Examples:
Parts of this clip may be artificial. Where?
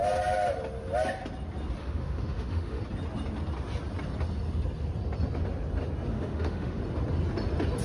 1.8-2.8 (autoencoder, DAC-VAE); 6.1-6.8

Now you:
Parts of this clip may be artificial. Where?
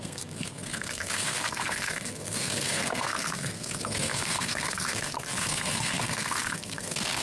0.0-7.2 (codec, SNAC)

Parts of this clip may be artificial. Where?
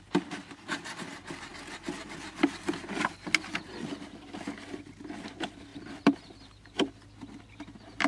none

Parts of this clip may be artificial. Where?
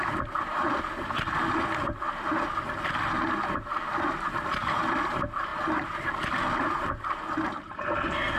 none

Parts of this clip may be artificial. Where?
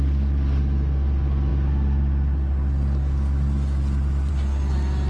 none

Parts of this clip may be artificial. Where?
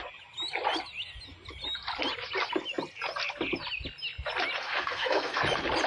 4.6-5.4 (codec, SNAC)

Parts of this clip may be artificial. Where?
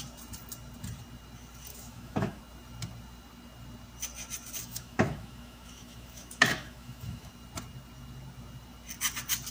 1.7-2.4 (autoencoder, DAC-VAE); 4.6-7.3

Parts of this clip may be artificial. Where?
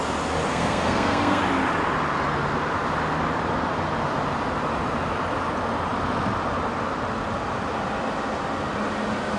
0.5-1.4 (codec, SNAC)